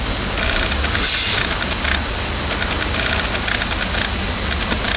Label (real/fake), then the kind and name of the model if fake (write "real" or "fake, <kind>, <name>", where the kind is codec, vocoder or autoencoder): real